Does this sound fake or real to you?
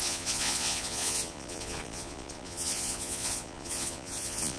fake